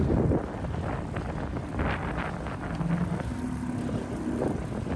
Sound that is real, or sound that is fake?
real